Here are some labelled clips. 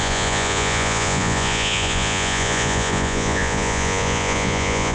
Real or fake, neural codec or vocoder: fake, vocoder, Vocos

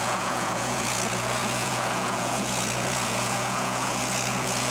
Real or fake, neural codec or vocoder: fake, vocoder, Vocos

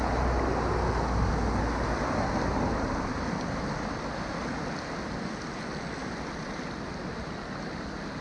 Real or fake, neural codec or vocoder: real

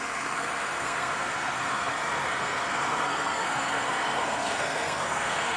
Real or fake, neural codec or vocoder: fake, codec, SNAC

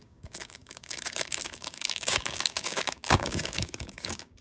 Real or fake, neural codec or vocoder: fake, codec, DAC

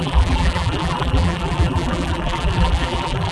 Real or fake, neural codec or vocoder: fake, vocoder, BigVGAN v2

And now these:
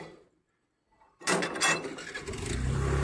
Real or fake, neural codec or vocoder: real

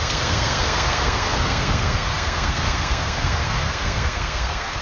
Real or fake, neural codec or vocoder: fake, codec, SNAC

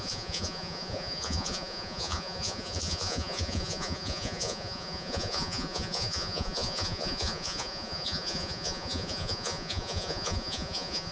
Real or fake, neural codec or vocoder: fake, vocoder, Vocos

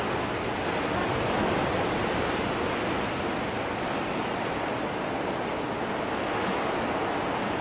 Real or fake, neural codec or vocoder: real